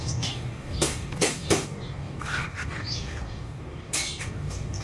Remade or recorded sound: remade